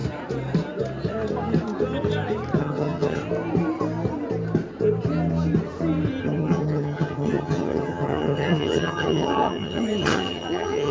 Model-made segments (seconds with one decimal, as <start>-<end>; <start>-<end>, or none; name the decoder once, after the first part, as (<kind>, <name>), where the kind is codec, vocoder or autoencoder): 2.6-3.2 (vocoder, HiFi-GAN); 6.2-10.9